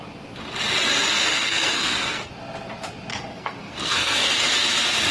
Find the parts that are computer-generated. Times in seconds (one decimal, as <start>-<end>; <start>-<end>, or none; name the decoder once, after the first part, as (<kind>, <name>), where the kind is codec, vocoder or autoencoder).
1.3-2.3 (codec, SNAC); 3.1-4.3